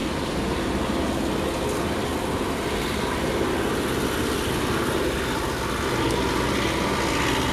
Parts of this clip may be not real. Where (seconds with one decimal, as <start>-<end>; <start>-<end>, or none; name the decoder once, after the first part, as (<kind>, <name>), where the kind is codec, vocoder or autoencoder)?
none